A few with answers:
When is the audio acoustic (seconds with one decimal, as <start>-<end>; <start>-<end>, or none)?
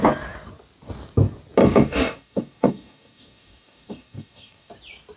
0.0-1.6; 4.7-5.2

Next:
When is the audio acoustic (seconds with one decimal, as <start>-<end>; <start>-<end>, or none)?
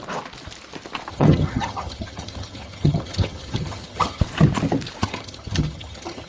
0.0-1.1; 4.2-5.0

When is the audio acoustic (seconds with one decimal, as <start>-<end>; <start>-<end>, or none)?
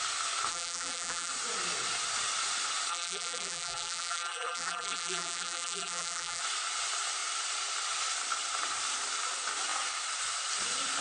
0.0-0.5; 1.3-2.9; 6.4-11.0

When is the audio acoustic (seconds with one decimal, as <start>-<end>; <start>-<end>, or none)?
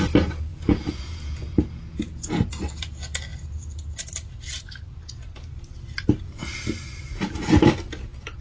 0.0-0.5; 2.5-8.4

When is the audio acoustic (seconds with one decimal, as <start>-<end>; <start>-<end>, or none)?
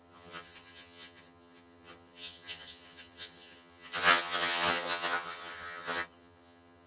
none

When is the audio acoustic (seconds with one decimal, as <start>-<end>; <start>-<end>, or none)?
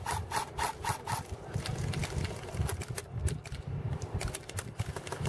0.0-5.3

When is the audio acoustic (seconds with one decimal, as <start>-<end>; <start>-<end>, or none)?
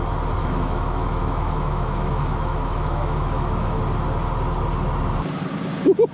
0.0-0.4; 3.8-6.1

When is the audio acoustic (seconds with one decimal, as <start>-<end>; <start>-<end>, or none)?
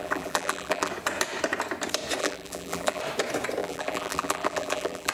0.9-2.2; 3.0-3.6